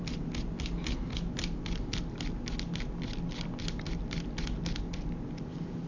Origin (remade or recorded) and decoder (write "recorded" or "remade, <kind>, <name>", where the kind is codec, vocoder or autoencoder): recorded